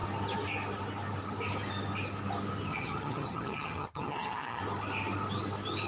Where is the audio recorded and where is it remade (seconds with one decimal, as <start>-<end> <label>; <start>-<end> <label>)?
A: 0.0-2.7 recorded; 2.7-4.6 remade; 4.6-5.9 recorded